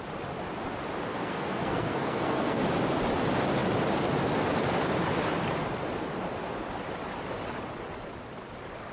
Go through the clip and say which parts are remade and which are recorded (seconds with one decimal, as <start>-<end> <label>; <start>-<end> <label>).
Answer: 0.0-1.1 recorded; 1.1-2.6 remade; 2.6-8.9 recorded